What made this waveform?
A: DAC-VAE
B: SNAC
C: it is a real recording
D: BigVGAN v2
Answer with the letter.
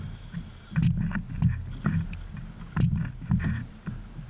C